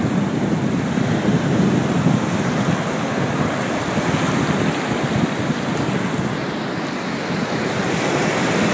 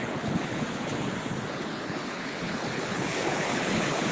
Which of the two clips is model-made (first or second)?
second